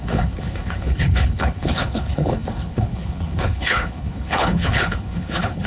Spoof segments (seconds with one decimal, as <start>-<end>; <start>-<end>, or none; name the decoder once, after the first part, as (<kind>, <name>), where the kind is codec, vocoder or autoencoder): 0.0-5.7 (codec, HILCodec)